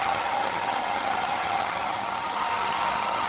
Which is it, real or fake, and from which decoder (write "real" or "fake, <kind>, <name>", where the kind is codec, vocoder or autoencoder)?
fake, vocoder, HiFi-GAN